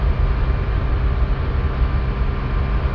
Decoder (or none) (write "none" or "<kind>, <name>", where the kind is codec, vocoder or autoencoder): none